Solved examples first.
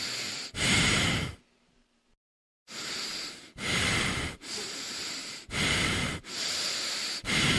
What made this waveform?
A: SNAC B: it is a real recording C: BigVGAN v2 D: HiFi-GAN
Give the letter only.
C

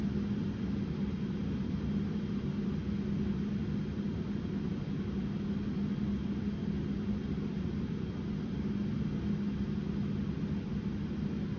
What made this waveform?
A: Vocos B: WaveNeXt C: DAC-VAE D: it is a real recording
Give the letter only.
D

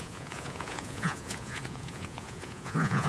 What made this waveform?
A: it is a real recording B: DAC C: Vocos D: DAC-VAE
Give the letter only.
C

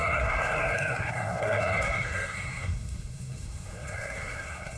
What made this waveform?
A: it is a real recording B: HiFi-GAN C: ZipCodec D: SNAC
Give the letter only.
D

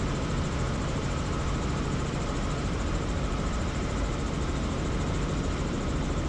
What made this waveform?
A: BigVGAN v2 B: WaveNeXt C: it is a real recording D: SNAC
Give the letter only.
A